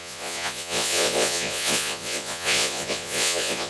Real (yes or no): no